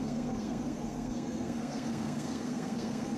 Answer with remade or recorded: remade